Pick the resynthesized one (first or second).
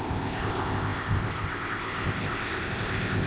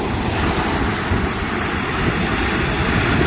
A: first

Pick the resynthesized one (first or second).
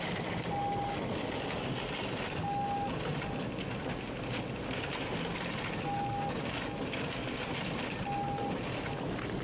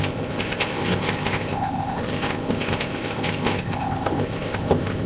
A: second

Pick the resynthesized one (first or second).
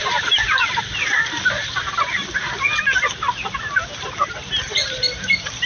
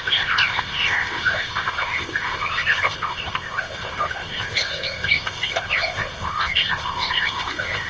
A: second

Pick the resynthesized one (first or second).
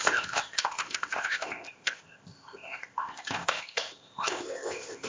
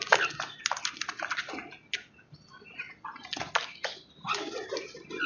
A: first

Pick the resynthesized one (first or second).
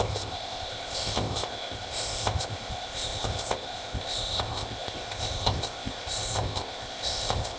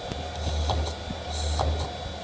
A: first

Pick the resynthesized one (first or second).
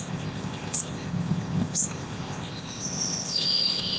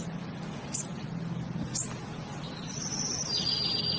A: first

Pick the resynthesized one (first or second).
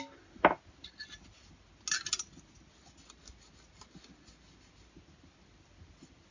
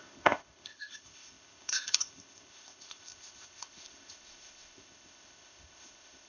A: second